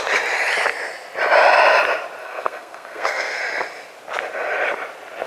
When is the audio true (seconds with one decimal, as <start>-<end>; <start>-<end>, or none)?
0.0-2.2; 3.4-5.3